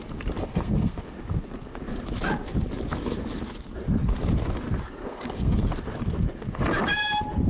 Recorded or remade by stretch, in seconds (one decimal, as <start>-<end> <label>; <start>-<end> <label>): 0.0-0.4 recorded; 0.4-1.0 remade; 1.0-5.0 recorded; 5.0-5.6 remade; 5.6-7.5 recorded